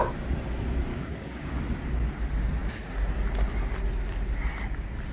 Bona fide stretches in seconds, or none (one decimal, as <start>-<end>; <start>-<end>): 0.0-0.9; 1.6-5.1